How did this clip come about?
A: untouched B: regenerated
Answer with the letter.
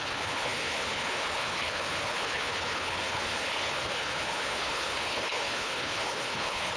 B